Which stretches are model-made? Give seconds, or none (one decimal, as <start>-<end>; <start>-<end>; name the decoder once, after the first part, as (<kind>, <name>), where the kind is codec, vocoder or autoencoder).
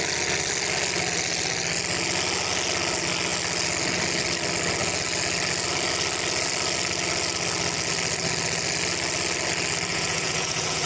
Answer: 9.9-10.9 (vocoder, Vocos)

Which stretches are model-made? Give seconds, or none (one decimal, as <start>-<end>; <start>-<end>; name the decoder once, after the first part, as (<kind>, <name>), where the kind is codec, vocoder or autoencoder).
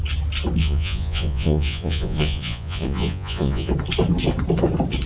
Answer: 0.6-3.7 (vocoder, Vocos)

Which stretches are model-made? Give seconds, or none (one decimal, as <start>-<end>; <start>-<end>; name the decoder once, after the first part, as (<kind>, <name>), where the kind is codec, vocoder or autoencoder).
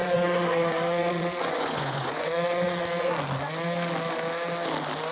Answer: 0.0-3.1 (vocoder, Vocos)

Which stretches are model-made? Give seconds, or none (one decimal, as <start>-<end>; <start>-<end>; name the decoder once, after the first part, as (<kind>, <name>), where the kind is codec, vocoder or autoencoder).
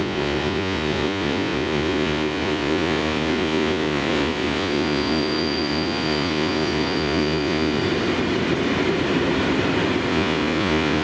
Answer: 0.0-7.8 (vocoder, Vocos); 10.1-11.0